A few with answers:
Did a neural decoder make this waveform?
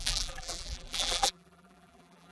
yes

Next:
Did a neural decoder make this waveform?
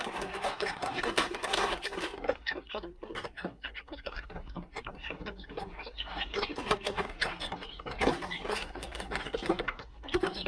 yes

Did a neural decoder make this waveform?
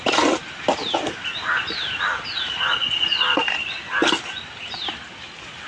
no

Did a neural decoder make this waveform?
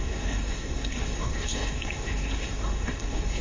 yes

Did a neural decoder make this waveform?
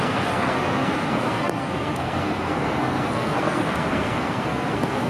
yes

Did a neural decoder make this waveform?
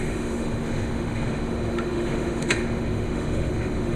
yes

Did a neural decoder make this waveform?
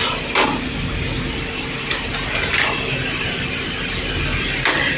no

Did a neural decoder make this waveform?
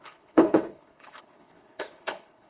yes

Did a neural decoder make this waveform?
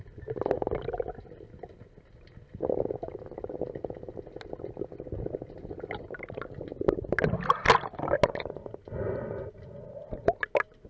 no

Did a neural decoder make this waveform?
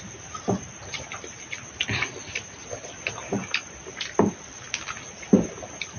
no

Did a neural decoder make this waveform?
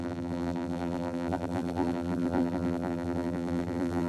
yes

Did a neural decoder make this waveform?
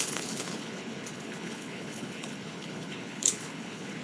yes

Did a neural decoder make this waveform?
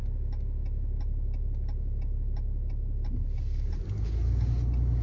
no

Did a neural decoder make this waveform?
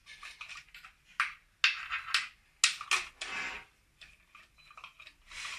no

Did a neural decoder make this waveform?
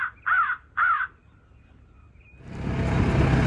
no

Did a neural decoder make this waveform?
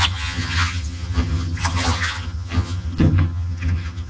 yes